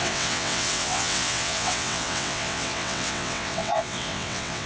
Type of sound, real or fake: fake